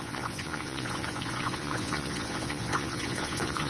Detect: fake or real fake